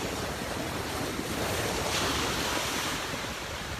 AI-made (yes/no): yes